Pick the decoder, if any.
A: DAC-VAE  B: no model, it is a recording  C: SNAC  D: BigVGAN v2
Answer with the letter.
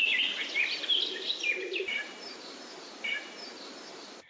B